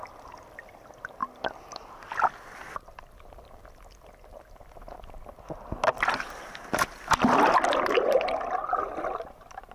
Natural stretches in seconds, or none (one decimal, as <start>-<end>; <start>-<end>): 0.0-9.7